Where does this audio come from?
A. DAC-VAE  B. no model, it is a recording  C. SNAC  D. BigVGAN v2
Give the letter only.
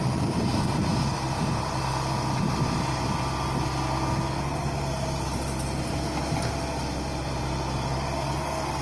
B